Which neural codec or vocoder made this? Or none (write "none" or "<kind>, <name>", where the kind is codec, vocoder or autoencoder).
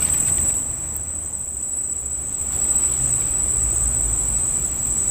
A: vocoder, BigVGAN v2